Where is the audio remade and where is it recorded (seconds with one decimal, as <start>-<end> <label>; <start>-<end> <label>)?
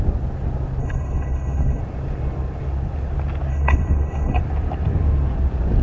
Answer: 0.0-0.8 recorded; 0.8-1.8 remade; 1.8-3.5 recorded; 3.5-4.4 remade; 4.4-5.8 recorded